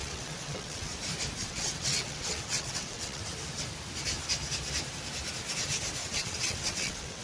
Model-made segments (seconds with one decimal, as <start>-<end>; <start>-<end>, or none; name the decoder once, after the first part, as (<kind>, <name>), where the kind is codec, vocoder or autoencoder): 0.0-0.9 (vocoder, WaveNeXt); 1.4-3.2; 6.0-7.2